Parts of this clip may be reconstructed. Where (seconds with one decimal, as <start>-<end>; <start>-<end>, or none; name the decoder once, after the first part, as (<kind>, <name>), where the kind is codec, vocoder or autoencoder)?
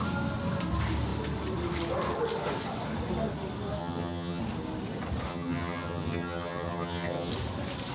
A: 3.8-4.4 (vocoder, HiFi-GAN); 5.3-7.3